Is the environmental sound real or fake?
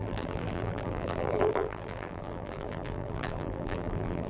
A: fake